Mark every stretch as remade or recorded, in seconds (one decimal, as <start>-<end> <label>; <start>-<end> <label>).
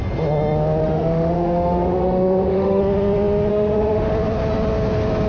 0.0-0.8 recorded; 0.8-2.8 remade; 2.8-3.5 recorded; 3.5-4.1 remade; 4.1-5.3 recorded